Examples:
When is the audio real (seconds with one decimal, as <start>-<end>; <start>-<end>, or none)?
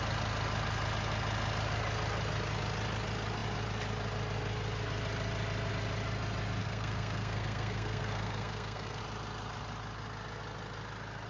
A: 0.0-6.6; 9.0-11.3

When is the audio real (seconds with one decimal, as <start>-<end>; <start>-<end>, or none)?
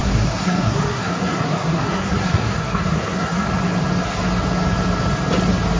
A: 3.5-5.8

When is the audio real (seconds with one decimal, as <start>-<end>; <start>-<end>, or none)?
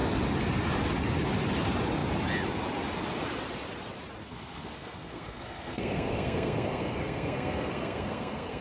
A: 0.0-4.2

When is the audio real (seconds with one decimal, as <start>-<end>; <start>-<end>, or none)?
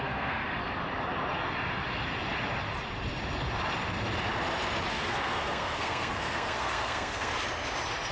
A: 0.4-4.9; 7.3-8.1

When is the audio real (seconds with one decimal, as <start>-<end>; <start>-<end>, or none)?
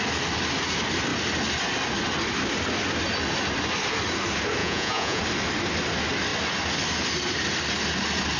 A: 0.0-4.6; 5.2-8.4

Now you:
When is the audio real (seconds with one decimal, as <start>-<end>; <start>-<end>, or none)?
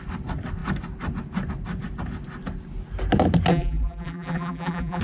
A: 0.0-3.5